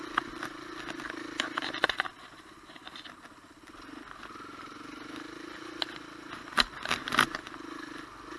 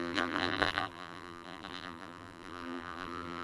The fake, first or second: second